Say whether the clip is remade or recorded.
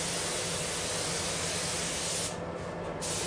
recorded